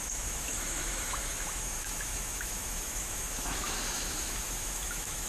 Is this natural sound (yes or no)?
no